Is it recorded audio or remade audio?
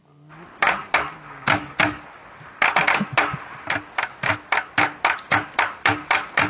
recorded